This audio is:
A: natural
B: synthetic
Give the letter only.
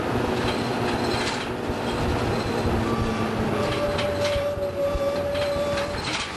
A